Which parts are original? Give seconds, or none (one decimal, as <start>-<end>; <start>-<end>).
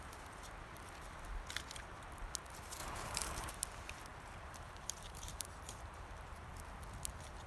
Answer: 0.0-2.8; 3.5-4.1; 6.5-7.5